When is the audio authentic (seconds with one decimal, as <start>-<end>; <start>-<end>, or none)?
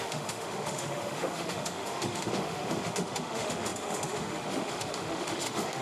none